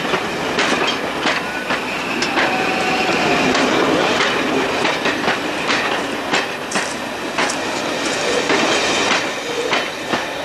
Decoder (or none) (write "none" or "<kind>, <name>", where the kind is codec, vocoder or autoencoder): none